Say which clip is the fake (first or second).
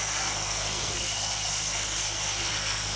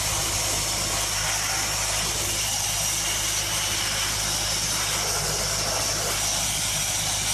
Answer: first